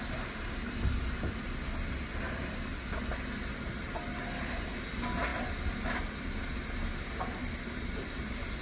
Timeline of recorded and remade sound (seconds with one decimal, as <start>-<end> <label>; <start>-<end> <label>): 0.0-8.6 recorded